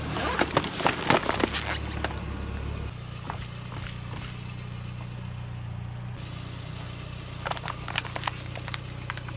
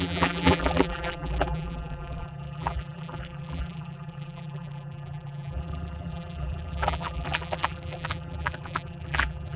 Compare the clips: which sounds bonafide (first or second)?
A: first